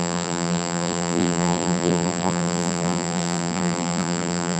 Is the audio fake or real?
fake